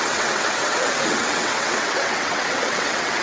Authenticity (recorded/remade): remade